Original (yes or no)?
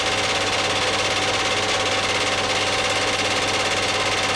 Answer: yes